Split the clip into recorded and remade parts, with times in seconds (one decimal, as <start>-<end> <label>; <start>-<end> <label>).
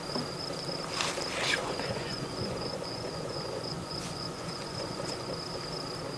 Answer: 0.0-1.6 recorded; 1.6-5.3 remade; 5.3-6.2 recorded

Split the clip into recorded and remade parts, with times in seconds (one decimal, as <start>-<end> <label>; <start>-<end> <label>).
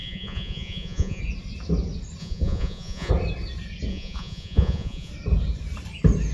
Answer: 0.0-1.2 remade; 1.2-2.2 recorded; 2.2-3.1 remade; 3.1-3.9 recorded; 3.9-5.1 remade; 5.1-6.3 recorded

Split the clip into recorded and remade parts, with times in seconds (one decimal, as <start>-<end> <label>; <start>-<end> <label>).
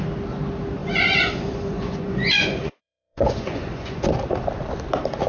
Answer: 0.0-0.8 recorded; 0.8-4.0 remade; 4.0-5.3 recorded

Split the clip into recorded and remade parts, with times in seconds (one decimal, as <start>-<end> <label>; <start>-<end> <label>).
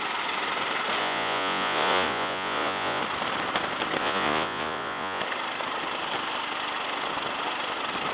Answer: 0.0-1.0 recorded; 1.0-3.0 remade; 3.0-4.0 recorded; 4.0-5.2 remade; 5.2-8.1 recorded